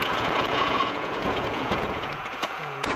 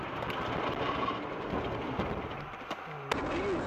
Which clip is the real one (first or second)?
second